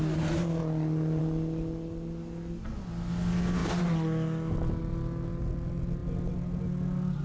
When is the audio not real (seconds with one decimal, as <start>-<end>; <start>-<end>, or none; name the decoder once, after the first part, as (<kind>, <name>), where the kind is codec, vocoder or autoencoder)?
none